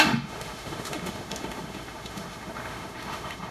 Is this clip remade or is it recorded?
remade